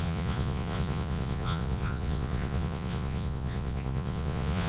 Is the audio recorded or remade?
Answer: remade